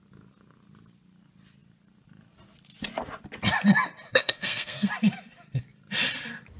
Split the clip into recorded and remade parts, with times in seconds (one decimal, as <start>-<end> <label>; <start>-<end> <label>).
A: 0.0-4.1 recorded; 4.1-4.9 remade; 4.9-6.6 recorded